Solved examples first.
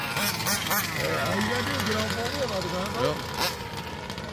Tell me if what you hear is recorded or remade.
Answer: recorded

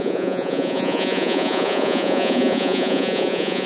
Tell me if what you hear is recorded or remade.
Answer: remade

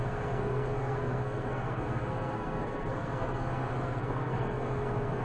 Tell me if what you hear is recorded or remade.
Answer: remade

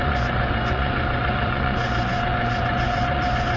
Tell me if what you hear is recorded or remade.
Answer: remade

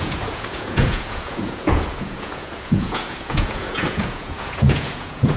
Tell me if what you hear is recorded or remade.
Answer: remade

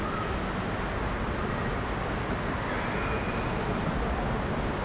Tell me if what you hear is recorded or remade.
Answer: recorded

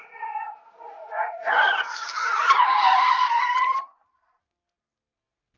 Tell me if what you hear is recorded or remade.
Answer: recorded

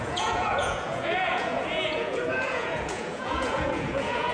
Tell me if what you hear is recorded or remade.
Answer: remade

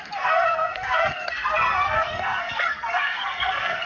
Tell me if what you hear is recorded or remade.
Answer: remade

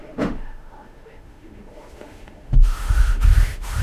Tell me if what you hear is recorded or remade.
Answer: remade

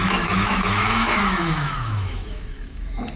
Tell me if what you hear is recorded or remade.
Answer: remade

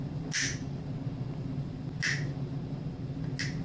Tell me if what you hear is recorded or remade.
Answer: recorded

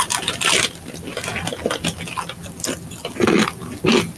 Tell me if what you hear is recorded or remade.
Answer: recorded